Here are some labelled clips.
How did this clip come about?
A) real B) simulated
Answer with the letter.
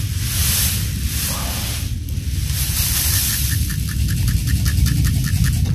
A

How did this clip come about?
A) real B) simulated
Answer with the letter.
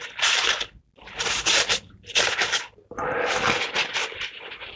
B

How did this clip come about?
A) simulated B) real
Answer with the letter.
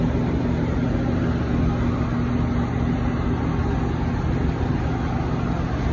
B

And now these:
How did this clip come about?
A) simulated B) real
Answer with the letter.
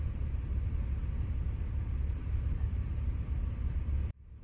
A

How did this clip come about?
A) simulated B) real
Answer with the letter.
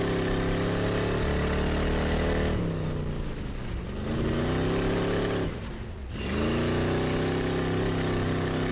B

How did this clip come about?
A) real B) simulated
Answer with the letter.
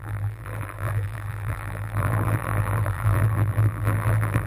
B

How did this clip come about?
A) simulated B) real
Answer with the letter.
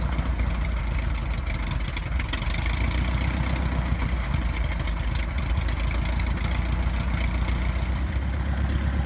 B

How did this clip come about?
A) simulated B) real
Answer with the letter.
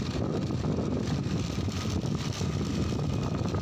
B